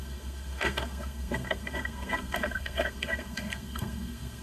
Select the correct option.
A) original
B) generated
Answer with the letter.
B